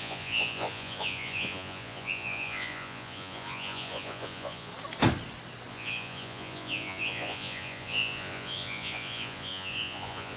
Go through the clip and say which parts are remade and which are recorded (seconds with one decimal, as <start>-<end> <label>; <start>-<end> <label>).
0.0-4.7 remade; 4.7-5.7 recorded; 5.7-10.4 remade